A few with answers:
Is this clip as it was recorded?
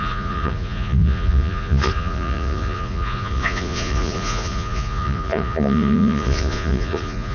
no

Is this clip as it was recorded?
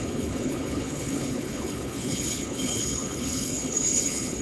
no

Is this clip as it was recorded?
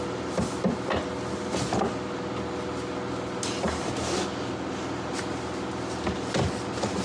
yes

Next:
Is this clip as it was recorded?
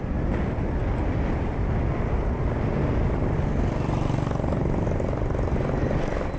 yes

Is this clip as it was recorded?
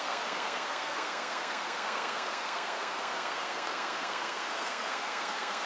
no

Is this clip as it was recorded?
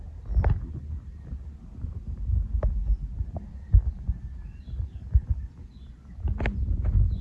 yes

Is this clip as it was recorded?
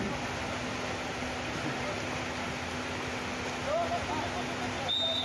yes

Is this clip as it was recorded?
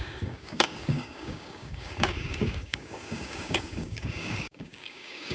no